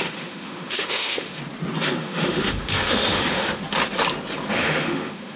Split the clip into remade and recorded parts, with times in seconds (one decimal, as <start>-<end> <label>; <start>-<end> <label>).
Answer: 0.0-1.4 remade; 1.4-2.0 recorded; 2.0-3.6 remade; 3.6-4.5 recorded; 4.5-5.4 remade